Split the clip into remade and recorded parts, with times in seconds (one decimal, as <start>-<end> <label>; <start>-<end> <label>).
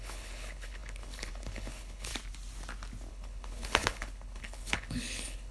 0.0-2.1 remade; 2.1-3.1 recorded; 3.1-5.5 remade